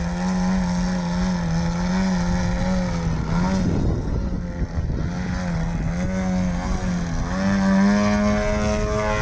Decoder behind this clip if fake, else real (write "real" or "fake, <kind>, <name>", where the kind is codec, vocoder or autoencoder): real